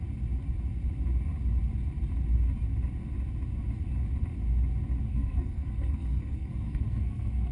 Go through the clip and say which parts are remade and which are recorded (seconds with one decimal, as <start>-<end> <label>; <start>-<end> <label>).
0.0-5.1 recorded; 5.1-7.5 remade